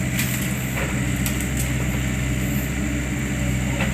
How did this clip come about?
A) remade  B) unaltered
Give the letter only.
B